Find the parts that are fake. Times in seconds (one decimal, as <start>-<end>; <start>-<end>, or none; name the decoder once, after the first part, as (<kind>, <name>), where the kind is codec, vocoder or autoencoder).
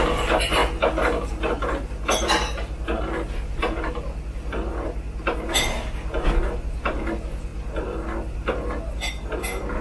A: none